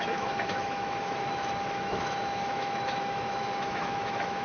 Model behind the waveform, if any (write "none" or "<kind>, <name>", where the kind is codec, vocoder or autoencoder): autoencoder, DAC-VAE